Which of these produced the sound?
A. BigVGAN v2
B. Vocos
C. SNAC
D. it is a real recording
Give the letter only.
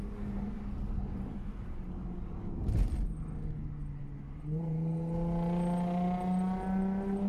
D